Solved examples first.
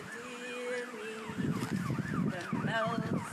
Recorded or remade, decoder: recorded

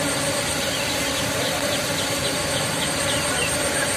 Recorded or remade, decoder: recorded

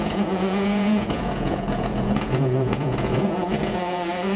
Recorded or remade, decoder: remade, vocoder, Vocos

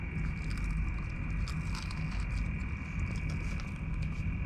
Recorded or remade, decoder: recorded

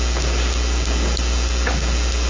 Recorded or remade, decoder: recorded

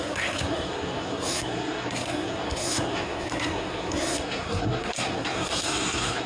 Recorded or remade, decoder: remade, codec, SNAC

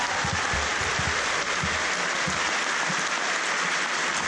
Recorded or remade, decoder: recorded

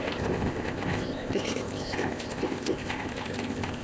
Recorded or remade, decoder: remade, codec, ZipCodec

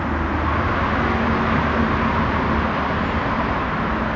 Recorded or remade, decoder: recorded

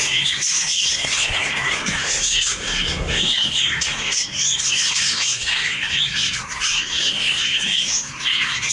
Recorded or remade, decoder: remade, codec, SNAC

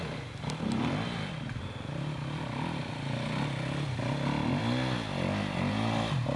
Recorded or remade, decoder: recorded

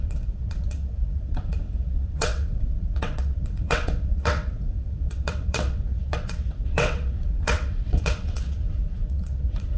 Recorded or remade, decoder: remade, vocoder, WaveNeXt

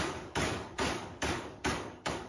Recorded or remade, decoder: remade, codec, DAC